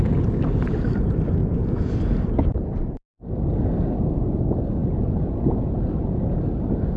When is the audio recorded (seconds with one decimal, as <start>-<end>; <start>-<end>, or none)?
0.0-1.4; 1.9-4.8; 6.2-7.0

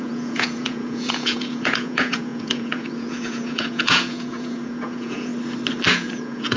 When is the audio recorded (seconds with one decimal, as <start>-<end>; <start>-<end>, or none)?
5.3-5.9

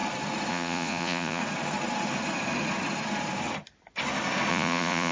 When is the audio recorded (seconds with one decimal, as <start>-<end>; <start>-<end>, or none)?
0.0-0.5; 1.4-4.5

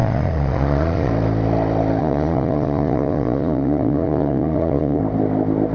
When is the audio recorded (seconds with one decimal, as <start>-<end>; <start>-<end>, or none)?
1.1-2.0; 5.0-5.7